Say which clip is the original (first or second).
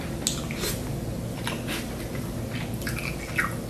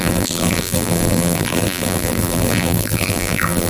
first